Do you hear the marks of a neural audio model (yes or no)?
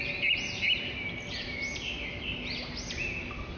no